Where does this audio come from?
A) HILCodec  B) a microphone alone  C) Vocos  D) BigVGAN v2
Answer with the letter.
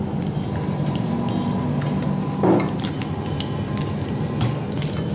B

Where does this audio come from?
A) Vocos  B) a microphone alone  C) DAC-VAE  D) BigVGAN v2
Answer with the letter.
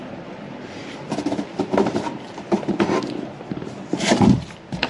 B